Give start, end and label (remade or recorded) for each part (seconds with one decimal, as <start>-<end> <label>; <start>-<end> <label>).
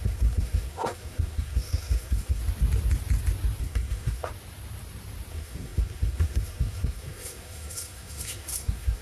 0.0-2.4 remade; 2.4-3.6 recorded; 3.6-4.3 remade; 4.3-5.3 recorded; 5.3-9.0 remade